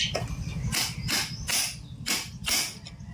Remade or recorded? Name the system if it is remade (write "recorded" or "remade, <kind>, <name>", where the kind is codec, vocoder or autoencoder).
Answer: recorded